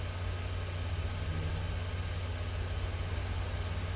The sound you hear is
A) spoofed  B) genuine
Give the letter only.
B